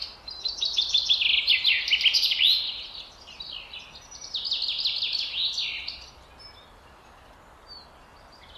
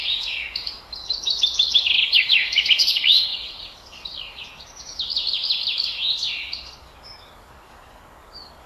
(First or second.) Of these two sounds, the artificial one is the second